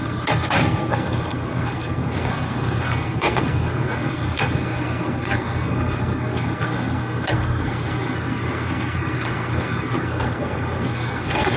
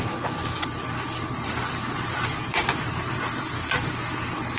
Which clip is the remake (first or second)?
first